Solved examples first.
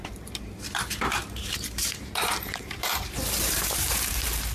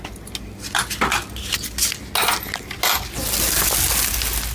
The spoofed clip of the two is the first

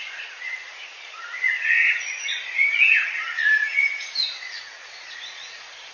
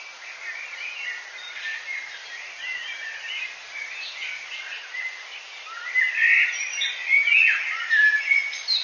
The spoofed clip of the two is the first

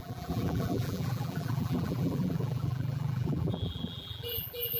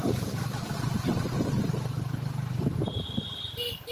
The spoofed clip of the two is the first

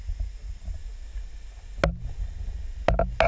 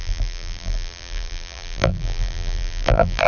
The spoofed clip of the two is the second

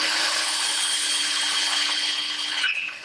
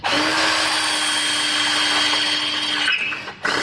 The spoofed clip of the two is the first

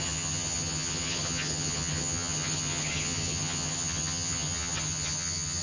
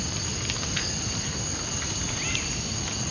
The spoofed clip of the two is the first